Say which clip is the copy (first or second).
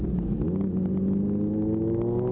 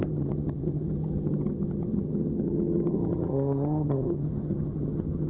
second